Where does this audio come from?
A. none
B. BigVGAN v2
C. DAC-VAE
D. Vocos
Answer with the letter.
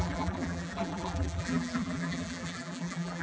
B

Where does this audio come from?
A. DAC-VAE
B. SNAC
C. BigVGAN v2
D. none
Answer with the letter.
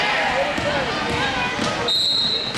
D